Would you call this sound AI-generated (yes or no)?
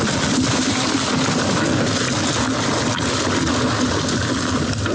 no